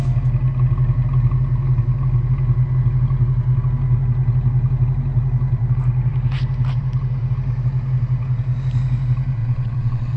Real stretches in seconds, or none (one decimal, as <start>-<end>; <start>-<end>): 0.0-9.4